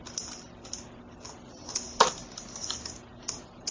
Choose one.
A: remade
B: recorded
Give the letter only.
B